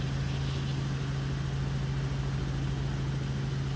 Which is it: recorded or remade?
recorded